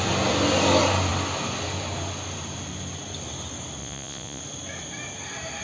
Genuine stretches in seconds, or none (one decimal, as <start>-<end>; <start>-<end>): 0.0-3.8; 4.4-5.6